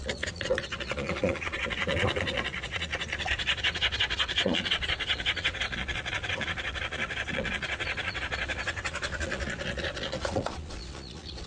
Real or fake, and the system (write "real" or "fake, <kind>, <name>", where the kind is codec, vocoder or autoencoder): fake, vocoder, Vocos